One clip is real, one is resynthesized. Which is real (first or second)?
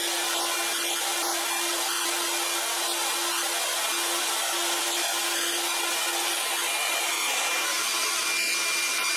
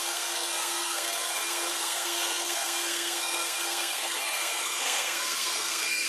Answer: first